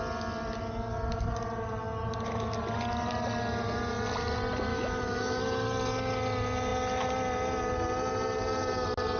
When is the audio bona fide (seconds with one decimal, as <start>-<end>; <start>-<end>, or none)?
0.0-4.7; 5.4-9.2